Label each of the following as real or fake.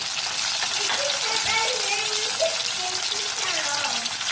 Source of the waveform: real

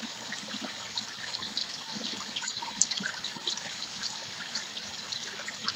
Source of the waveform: fake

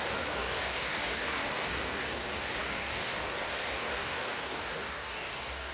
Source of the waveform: fake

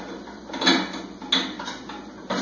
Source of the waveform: real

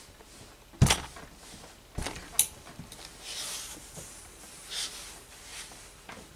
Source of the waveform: real